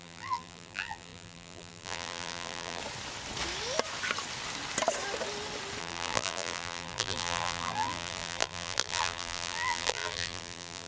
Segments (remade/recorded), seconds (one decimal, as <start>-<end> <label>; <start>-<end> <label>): 0.0-2.8 remade; 2.8-5.8 recorded; 5.8-10.9 remade